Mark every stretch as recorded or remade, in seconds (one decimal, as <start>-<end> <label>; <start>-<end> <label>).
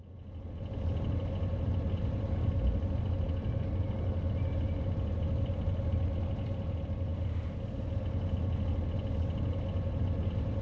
0.0-10.6 recorded